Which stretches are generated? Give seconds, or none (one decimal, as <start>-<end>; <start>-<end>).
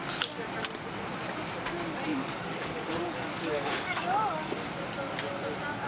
2.1-4.5